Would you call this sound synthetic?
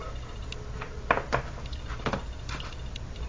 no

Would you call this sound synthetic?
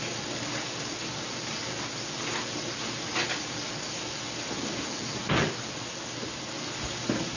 no